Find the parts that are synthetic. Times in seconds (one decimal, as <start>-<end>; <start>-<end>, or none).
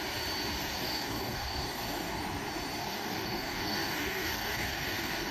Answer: 0.7-2.2; 2.8-5.3